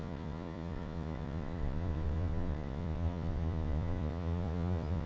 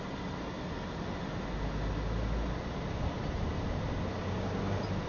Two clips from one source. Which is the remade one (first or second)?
first